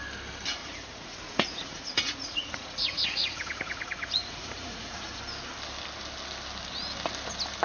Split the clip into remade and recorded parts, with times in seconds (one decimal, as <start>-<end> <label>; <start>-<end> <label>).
0.0-0.6 recorded; 0.6-5.2 remade; 5.2-7.6 recorded